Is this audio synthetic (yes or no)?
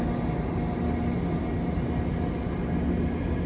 no